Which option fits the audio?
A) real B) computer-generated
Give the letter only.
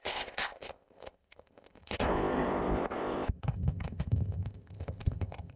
B